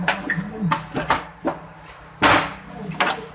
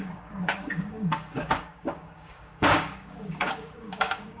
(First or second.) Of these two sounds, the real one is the first